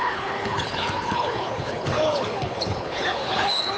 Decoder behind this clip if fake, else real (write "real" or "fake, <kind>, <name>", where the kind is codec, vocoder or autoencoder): fake, codec, HILCodec